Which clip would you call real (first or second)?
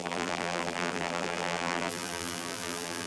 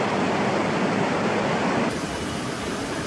second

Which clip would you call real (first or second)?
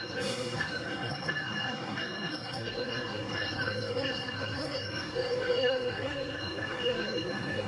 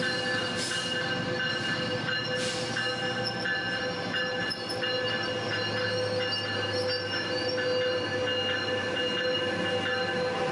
second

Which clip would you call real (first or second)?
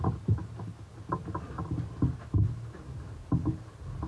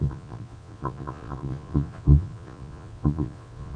first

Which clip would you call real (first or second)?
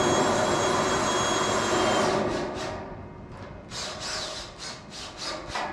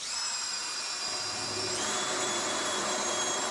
first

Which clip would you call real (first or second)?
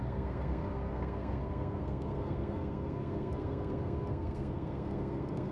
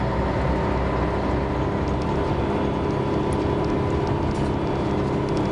second